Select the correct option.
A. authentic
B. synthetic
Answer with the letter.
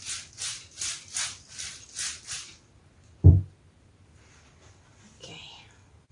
A